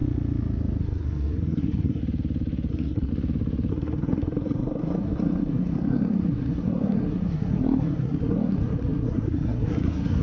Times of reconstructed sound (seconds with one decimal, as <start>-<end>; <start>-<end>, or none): 0.8-2.0; 2.7-3.1; 3.7-10.2